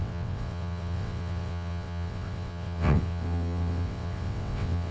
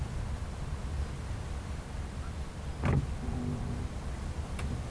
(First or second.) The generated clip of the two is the first